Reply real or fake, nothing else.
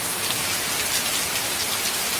real